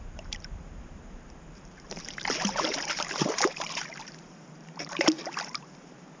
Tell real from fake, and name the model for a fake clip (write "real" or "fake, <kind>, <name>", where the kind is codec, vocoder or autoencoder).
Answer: fake, vocoder, BigVGAN v2